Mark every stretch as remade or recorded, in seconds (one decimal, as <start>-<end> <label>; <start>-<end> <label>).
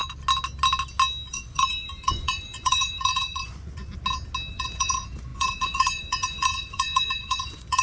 0.0-1.3 recorded; 1.3-3.9 remade; 3.9-4.5 recorded; 4.5-7.8 remade